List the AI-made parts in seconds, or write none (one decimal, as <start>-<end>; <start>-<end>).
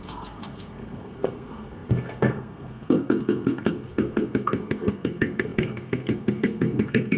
0.0-7.2